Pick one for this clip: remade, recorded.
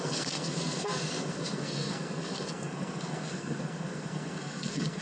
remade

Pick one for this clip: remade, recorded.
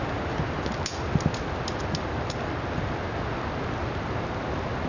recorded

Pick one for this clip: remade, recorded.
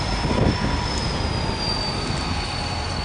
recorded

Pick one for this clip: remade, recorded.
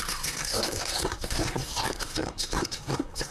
remade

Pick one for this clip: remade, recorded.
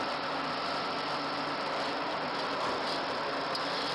recorded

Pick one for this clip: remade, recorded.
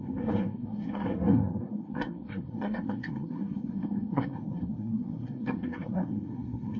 remade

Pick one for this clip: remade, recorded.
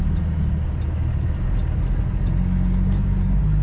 recorded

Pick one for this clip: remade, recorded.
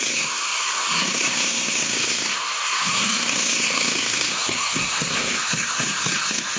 remade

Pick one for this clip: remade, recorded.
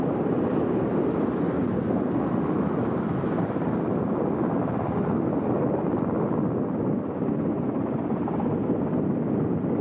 recorded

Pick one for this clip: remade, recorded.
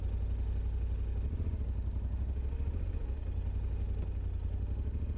recorded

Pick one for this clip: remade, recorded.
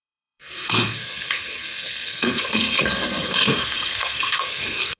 remade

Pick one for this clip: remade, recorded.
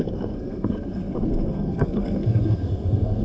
remade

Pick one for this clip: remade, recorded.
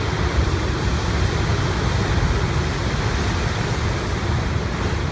recorded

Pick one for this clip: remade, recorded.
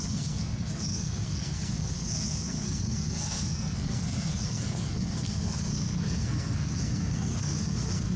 remade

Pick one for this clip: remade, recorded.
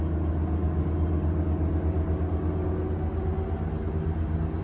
recorded